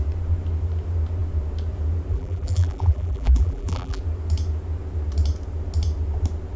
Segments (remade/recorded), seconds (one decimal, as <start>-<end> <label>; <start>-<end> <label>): 0.0-2.1 recorded; 2.1-4.0 remade; 4.0-6.6 recorded